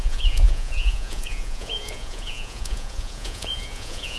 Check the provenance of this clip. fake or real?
fake